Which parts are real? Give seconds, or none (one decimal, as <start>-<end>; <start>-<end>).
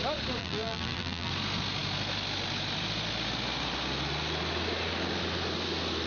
0.0-0.4; 1.3-6.1